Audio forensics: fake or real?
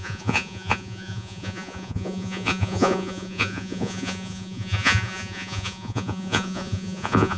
fake